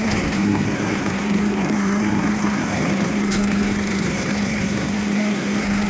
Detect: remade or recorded remade